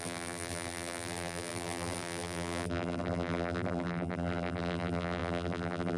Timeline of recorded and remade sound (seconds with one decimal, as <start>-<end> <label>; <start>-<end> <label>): 0.0-6.0 remade